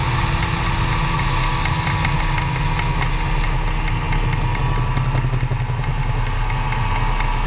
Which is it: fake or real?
real